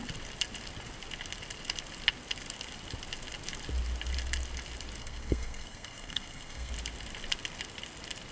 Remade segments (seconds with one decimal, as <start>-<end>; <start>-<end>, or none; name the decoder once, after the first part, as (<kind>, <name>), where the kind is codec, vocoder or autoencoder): 5.0-6.7 (codec, SNAC)